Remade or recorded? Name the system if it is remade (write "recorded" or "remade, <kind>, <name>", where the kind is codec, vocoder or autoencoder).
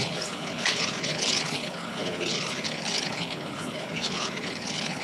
remade, codec, HILCodec